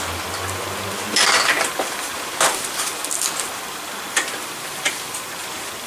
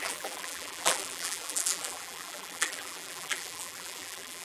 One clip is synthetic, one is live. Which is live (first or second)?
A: first